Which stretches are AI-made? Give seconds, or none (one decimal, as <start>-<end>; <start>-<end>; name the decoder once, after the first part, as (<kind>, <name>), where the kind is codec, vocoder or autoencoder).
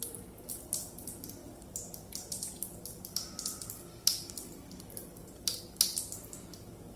none